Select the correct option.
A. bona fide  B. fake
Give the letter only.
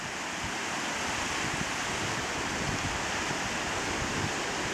A